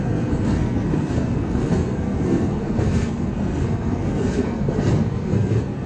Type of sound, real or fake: fake